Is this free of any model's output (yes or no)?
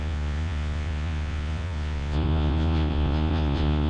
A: no